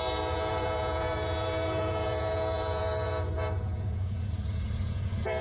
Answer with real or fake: fake